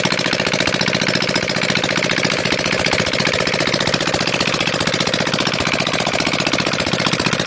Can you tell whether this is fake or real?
real